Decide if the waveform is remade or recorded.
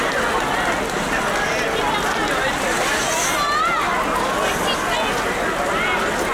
recorded